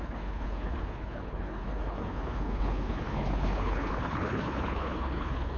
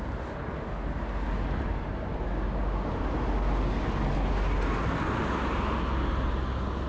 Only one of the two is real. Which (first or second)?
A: second